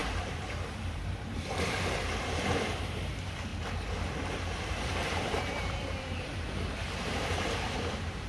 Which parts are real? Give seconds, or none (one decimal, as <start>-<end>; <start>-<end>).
3.5-4.3